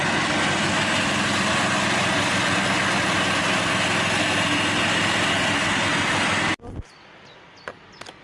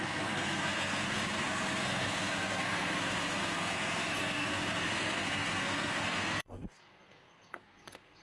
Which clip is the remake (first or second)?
second